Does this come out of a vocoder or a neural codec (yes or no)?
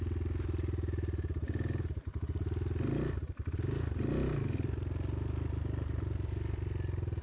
no